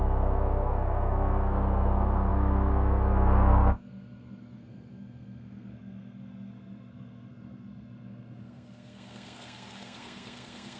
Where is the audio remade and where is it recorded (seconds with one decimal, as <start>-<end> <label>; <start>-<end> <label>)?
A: 0.0-10.8 remade